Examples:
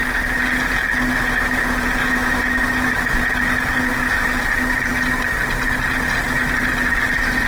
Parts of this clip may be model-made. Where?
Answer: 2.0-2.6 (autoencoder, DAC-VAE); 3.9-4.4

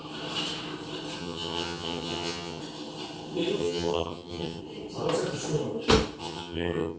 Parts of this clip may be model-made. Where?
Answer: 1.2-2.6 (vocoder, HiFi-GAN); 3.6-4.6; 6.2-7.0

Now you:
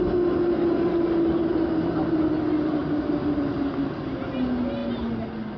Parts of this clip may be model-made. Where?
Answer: none

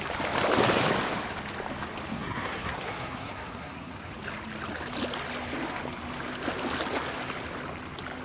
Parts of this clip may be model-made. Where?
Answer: 2.1-4.1 (codec, SNAC)